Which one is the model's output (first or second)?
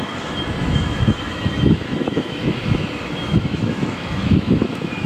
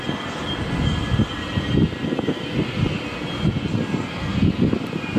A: first